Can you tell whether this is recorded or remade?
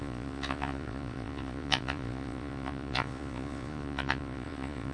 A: remade